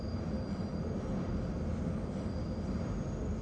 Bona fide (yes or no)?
yes